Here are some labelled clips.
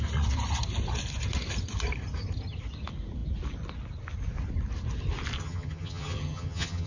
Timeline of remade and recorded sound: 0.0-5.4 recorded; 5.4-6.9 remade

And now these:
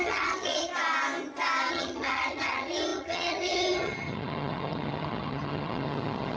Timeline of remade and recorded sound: 0.0-0.7 remade; 0.7-1.7 recorded; 1.7-6.4 remade

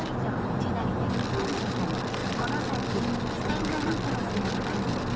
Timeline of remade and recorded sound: 0.0-5.2 recorded

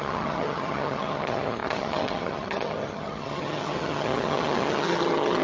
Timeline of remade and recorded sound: 0.0-5.4 remade

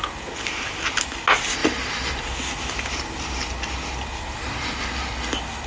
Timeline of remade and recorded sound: 0.0-5.7 recorded

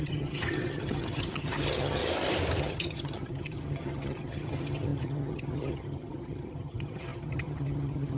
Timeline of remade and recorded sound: 0.0-2.0 remade; 2.0-2.6 recorded; 2.6-8.2 remade

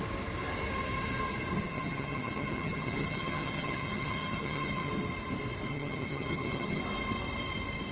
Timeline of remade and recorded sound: 0.0-1.6 recorded; 1.6-4.9 remade; 4.9-5.7 recorded; 5.7-6.8 remade; 6.8-7.9 recorded